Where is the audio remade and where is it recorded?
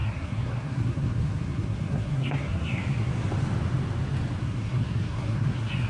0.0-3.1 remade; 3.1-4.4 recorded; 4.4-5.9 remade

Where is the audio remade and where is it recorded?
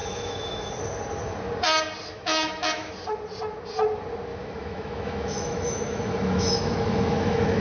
0.0-0.7 remade; 0.7-2.1 recorded; 2.1-2.9 remade; 2.9-4.3 recorded; 4.3-7.6 remade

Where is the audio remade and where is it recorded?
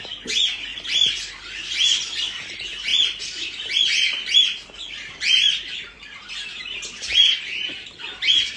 0.0-0.7 recorded; 0.7-1.3 remade; 1.3-2.9 recorded; 2.9-6.3 remade; 6.3-8.6 recorded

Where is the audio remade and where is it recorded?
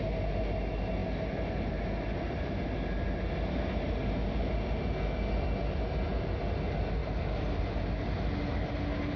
0.0-7.0 recorded; 7.0-7.6 remade; 7.6-9.2 recorded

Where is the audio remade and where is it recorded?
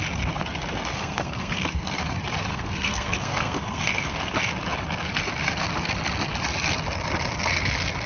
0.0-1.0 recorded; 1.0-2.0 remade; 2.0-2.5 recorded; 2.5-4.3 remade; 4.3-8.1 recorded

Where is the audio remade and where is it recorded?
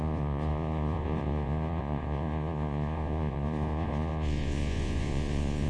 0.0-5.7 remade